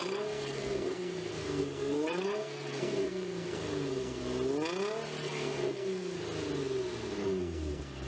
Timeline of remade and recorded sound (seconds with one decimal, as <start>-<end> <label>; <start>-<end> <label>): 0.0-4.2 remade; 4.2-5.2 recorded; 5.2-6.2 remade; 6.2-7.2 recorded; 7.2-8.1 remade